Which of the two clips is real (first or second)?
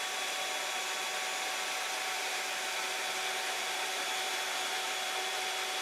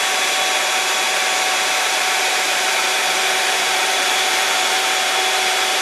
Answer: first